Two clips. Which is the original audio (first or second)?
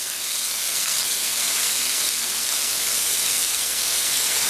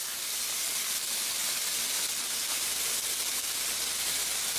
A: second